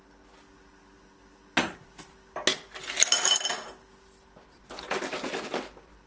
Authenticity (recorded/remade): recorded